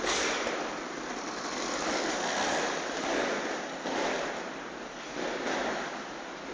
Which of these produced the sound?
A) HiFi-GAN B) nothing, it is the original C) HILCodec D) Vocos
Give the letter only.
B